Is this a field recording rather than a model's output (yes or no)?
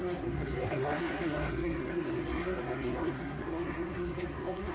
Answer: no